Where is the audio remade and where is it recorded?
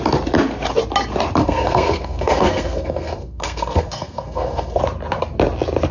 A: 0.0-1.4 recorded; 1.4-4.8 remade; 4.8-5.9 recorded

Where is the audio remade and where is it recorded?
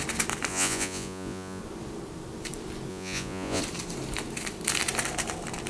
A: 0.0-0.5 recorded; 0.5-1.6 remade; 1.6-2.9 recorded; 2.9-3.6 remade; 3.6-5.7 recorded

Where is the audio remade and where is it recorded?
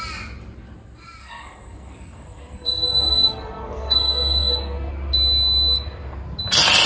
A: 0.0-1.2 recorded; 1.2-4.9 remade; 4.9-6.9 recorded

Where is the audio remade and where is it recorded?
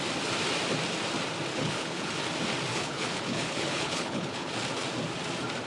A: 0.0-1.5 recorded; 1.5-2.1 remade; 2.1-2.7 recorded; 2.7-4.5 remade; 4.5-5.7 recorded